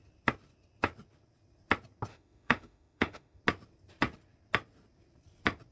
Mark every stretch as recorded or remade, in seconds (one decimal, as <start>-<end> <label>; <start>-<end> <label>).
0.0-2.1 recorded; 2.1-3.4 remade; 3.4-5.7 recorded